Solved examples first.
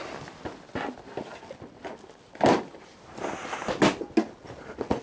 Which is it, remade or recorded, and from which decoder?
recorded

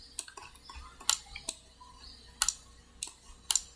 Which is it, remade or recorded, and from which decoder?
recorded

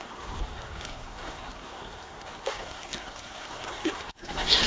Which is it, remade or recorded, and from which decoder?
remade, codec, SNAC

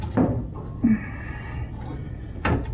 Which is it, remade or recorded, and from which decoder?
recorded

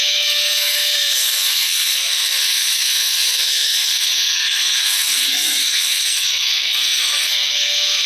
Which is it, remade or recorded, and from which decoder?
remade, codec, SNAC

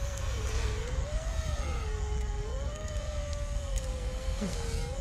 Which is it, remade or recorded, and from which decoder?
remade, codec, SNAC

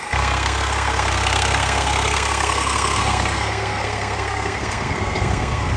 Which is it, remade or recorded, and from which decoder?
remade, codec, SNAC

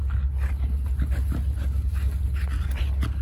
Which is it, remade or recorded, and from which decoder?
recorded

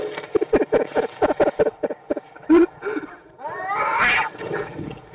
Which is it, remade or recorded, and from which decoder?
recorded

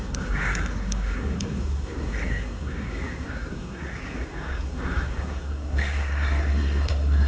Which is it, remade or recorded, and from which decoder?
remade, codec, SNAC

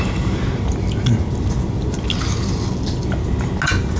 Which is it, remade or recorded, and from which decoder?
recorded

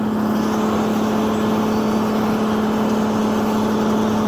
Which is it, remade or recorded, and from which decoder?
recorded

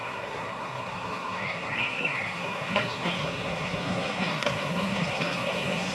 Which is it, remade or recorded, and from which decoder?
remade, codec, SNAC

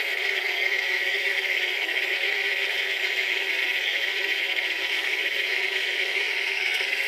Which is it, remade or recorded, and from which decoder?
remade, codec, SNAC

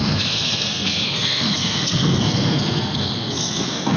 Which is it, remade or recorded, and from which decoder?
remade, codec, SNAC